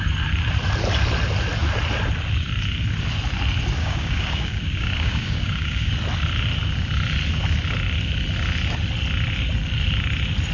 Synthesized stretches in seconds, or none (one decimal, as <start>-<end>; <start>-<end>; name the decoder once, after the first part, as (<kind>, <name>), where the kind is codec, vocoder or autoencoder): 3.8-5.9 (codec, DAC)